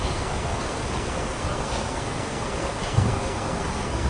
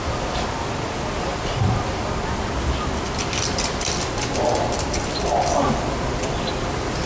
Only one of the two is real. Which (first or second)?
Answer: second